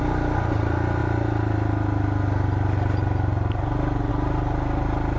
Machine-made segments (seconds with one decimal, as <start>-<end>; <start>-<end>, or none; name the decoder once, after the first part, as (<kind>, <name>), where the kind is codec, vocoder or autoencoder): none